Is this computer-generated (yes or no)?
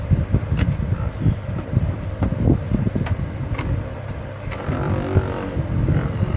no